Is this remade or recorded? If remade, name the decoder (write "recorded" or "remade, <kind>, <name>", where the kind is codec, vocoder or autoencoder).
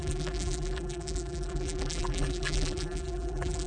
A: remade, vocoder, BigVGAN v2